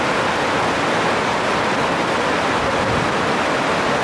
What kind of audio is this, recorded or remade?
recorded